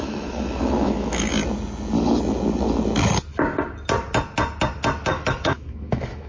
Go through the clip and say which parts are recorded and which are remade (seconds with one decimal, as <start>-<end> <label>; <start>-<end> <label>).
0.0-1.3 remade; 1.3-5.1 recorded; 5.1-6.3 remade